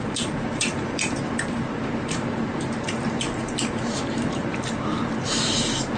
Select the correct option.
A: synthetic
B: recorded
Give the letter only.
A